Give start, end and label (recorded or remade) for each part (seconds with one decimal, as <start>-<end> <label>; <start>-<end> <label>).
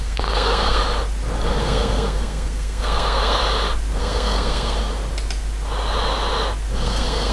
0.0-0.8 remade; 0.8-1.6 recorded; 1.6-3.4 remade; 3.4-4.0 recorded; 4.0-4.8 remade; 4.8-6.7 recorded; 6.7-7.3 remade